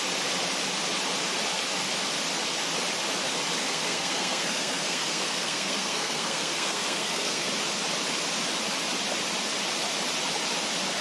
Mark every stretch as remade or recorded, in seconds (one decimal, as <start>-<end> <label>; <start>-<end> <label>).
0.0-3.6 recorded; 3.6-7.5 remade; 7.5-11.0 recorded